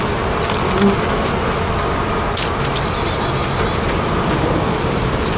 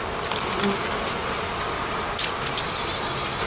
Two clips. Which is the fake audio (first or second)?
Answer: second